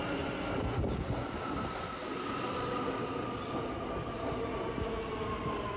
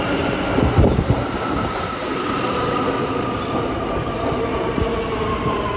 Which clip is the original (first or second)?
first